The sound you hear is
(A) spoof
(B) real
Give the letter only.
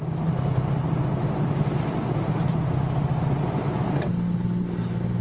B